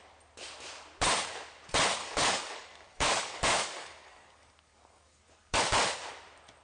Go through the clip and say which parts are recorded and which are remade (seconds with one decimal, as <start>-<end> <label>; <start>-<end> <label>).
0.0-2.0 recorded; 2.0-5.6 remade; 5.6-6.6 recorded